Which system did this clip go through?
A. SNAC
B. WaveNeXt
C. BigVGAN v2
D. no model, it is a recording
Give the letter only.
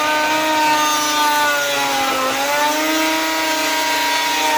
D